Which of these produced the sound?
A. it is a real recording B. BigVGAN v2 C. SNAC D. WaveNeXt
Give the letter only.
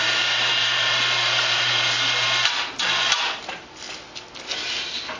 A